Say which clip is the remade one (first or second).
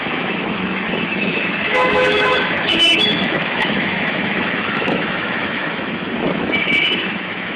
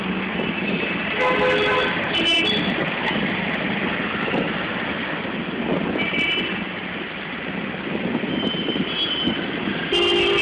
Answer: first